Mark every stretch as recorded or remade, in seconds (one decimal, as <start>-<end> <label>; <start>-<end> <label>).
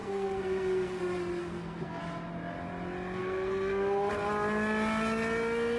0.0-1.0 remade; 1.0-1.4 recorded; 1.4-2.0 remade; 2.0-3.2 recorded; 3.2-4.1 remade; 4.1-5.8 recorded